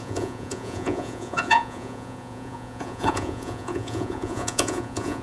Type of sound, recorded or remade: remade